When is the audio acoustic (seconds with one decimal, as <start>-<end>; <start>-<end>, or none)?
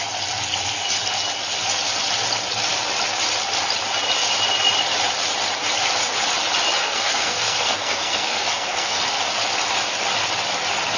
0.0-6.8; 9.0-11.0